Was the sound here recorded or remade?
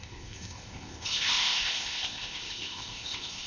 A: remade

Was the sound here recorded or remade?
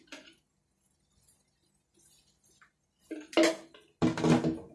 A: recorded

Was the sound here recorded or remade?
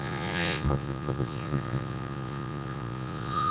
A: remade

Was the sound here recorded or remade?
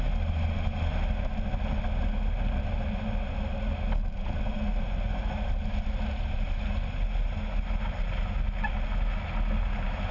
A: recorded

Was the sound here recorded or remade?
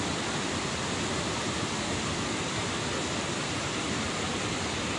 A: recorded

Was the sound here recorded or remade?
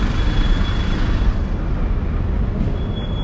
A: recorded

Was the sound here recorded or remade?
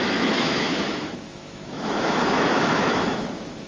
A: remade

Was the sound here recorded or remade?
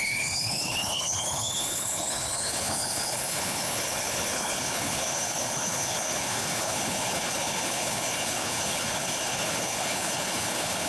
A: remade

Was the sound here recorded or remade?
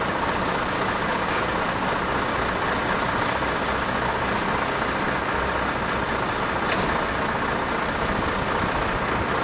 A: recorded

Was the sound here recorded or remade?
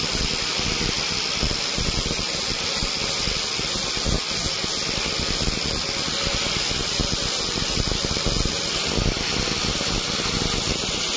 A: recorded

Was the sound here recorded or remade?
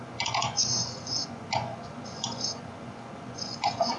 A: remade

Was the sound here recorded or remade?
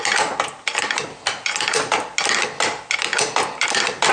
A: recorded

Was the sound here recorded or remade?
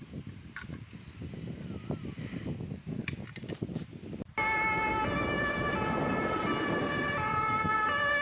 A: recorded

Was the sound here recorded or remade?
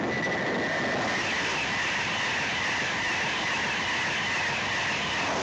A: recorded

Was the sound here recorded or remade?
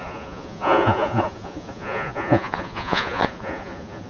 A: remade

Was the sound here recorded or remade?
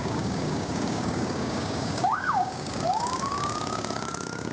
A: remade